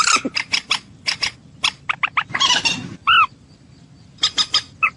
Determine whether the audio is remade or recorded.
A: recorded